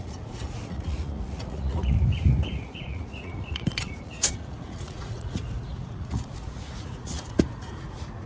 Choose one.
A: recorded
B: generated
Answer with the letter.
B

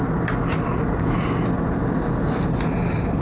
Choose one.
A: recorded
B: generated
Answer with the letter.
A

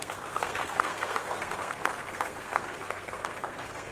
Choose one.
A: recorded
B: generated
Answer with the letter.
B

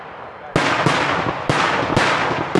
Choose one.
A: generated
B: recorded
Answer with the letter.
B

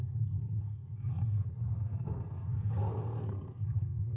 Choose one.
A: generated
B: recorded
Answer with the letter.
A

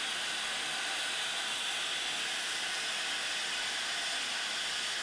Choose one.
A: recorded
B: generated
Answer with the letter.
A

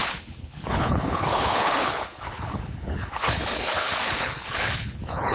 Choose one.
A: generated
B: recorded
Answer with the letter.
A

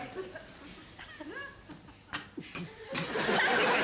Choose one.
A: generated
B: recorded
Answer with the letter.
B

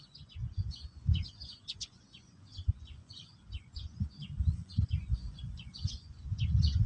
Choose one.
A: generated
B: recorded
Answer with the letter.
A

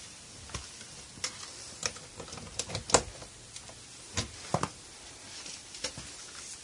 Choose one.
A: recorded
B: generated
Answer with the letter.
A